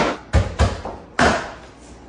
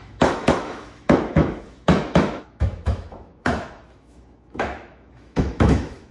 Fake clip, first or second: second